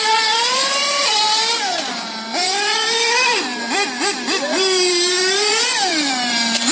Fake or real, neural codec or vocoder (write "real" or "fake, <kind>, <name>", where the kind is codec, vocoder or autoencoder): fake, vocoder, BigVGAN v2